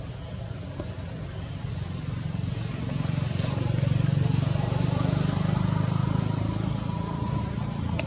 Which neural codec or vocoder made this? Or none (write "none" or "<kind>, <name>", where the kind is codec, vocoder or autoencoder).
none